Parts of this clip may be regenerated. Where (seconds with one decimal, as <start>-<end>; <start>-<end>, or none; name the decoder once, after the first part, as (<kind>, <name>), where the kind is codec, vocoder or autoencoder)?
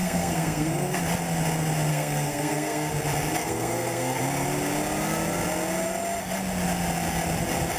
0.0-1.0 (codec, SNAC); 1.9-2.9; 3.4-4.2